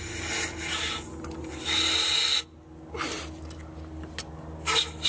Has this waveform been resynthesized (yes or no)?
no